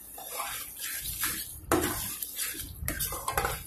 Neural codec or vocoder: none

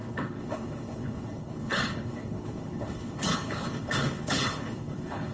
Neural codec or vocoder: codec, HILCodec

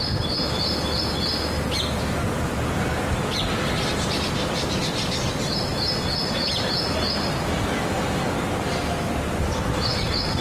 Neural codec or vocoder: none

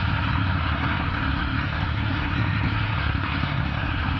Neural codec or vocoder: codec, SNAC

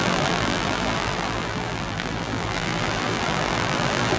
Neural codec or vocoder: vocoder, BigVGAN v2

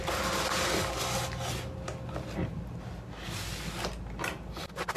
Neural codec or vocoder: none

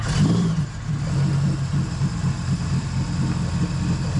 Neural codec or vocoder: none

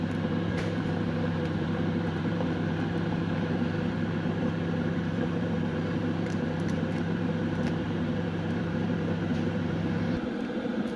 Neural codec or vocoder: vocoder, BigVGAN v2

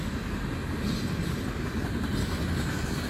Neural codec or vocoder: none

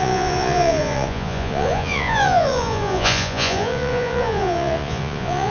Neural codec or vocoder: vocoder, Vocos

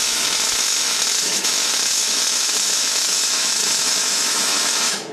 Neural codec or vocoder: autoencoder, DAC-VAE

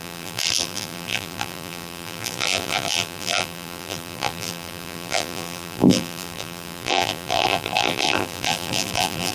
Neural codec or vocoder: vocoder, BigVGAN v2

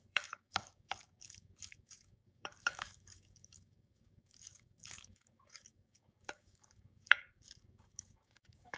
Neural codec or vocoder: codec, DAC